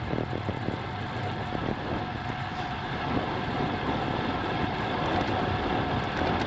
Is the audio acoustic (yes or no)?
yes